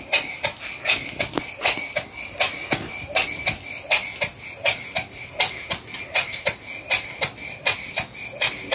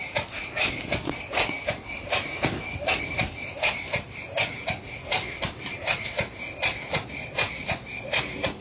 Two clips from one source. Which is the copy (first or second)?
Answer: second